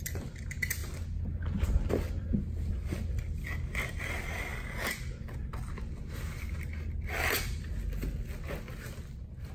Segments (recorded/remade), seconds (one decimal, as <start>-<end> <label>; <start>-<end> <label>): 0.0-9.5 recorded